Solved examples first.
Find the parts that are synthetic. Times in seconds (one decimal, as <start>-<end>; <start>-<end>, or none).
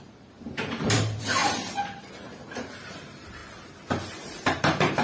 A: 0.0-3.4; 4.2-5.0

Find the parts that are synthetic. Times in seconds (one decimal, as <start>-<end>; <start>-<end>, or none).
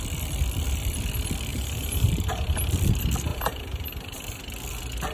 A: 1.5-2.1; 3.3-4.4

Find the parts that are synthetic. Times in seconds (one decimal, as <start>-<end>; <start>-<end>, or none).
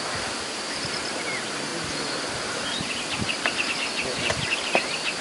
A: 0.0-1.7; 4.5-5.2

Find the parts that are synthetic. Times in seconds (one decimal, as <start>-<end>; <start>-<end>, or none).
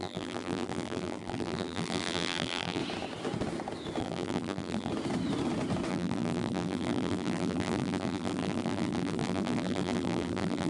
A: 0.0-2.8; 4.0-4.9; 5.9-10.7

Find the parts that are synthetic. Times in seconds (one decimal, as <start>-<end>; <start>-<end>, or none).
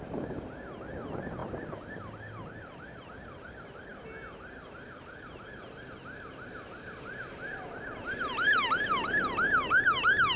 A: none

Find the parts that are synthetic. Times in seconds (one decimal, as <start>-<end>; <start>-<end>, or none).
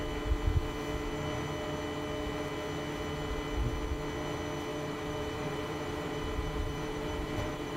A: 4.7-7.8